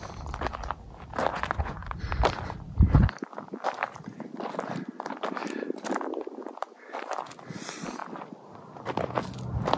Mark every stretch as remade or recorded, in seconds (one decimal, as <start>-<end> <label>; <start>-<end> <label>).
0.0-1.3 recorded; 1.3-2.0 remade; 2.0-9.8 recorded